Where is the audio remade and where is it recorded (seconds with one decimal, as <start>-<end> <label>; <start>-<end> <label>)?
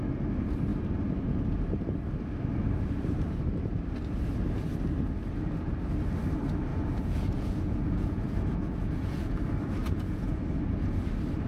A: 0.0-6.7 recorded; 6.7-9.4 remade; 9.4-9.8 recorded; 9.8-10.4 remade; 10.4-11.5 recorded